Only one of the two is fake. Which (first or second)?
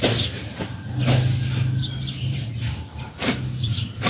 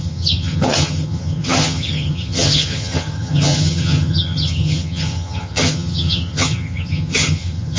second